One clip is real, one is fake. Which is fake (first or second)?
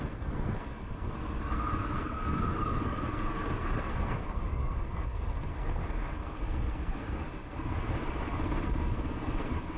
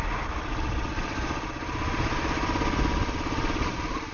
first